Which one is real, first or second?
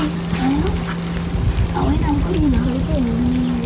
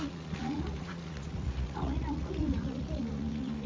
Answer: first